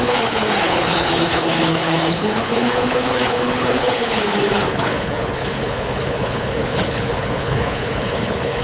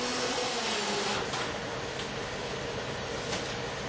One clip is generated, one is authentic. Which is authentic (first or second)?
second